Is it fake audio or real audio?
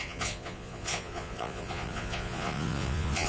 fake